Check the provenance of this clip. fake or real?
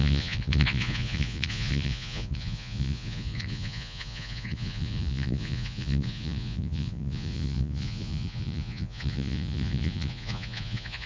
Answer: fake